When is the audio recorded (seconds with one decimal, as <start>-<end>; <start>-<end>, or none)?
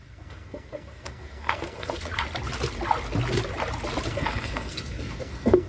2.1-4.1